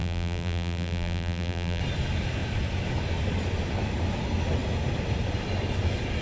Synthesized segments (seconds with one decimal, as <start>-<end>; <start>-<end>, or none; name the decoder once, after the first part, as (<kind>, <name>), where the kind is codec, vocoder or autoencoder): 0.0-1.8 (vocoder, BigVGAN v2)